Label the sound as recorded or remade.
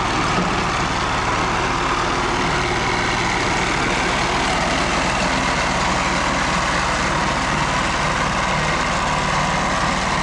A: recorded